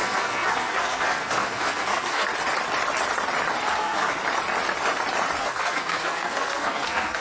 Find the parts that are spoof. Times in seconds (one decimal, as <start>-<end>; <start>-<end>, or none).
0.0-2.3; 3.7-4.2; 5.4-7.2